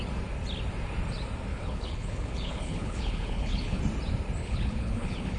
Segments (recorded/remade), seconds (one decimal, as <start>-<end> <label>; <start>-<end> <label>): 0.0-1.5 recorded; 1.5-3.8 remade; 3.8-4.4 recorded; 4.4-5.4 remade